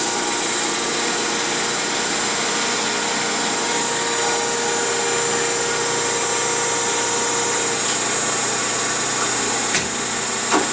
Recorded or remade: recorded